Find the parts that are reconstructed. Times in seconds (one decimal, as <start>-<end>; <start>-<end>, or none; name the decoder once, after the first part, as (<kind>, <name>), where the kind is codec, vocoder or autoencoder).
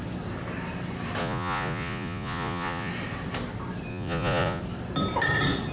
1.2-2.9 (vocoder, Vocos); 3.9-4.6